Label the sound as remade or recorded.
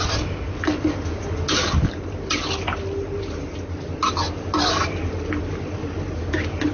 recorded